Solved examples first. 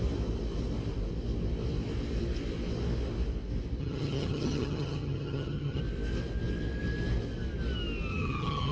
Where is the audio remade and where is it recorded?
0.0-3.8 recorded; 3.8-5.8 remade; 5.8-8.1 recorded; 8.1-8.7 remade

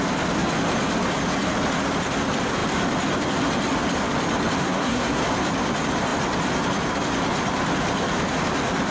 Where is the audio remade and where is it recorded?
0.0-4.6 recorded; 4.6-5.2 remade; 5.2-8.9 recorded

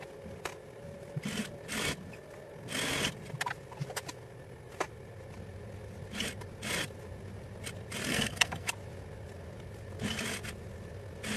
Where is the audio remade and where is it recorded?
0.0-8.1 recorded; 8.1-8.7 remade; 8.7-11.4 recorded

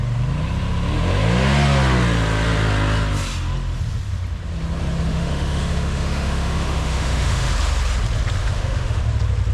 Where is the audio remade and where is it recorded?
0.0-5.1 recorded; 5.1-7.5 remade; 7.5-8.4 recorded; 8.4-9.0 remade; 9.0-9.5 recorded

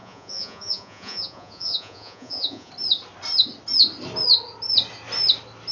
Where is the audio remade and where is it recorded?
0.0-2.7 remade; 2.7-5.7 recorded

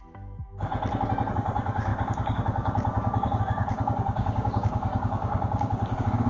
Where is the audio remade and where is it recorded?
0.0-0.7 remade; 0.7-1.3 recorded; 1.3-6.3 remade

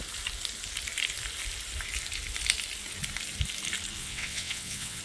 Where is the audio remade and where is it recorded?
0.0-4.0 recorded; 4.0-5.0 remade

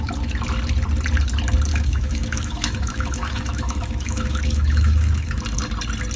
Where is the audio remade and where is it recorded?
0.0-1.7 recorded; 1.7-5.4 remade; 5.4-6.2 recorded